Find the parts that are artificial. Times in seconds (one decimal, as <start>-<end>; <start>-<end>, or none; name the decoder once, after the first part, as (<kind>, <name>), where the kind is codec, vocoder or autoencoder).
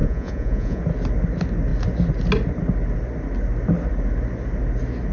0.0-0.8 (vocoder, Vocos)